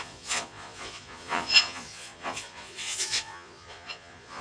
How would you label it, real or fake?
fake